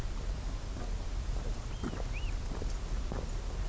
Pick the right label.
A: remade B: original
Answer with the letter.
B